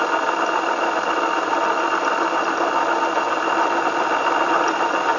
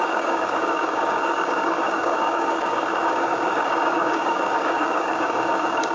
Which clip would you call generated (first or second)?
second